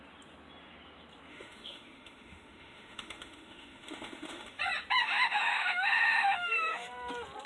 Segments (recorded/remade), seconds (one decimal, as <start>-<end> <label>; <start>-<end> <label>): 0.0-1.3 recorded; 1.3-4.6 remade; 4.6-5.0 recorded; 5.0-6.9 remade; 6.9-7.5 recorded